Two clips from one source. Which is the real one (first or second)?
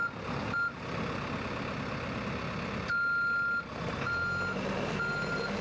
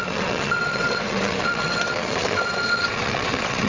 first